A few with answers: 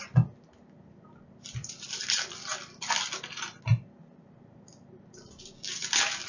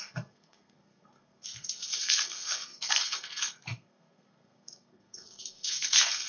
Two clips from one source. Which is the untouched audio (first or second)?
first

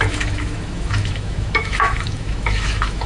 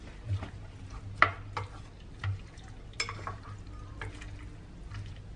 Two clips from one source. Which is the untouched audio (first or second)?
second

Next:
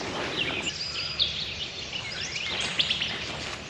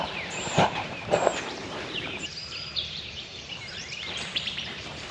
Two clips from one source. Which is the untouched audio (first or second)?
first